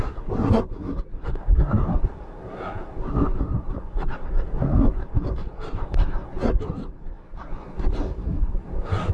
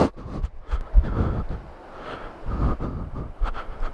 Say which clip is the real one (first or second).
second